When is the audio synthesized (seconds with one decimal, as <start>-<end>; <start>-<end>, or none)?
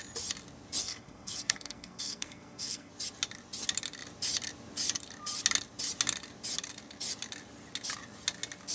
0.8-2.9